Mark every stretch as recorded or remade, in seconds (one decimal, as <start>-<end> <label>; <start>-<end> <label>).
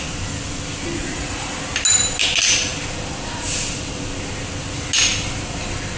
0.0-1.0 recorded; 1.0-1.6 remade; 1.6-6.0 recorded